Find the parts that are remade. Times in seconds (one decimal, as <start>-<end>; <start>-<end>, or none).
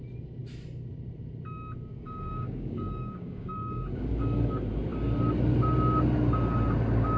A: 1.9-4.1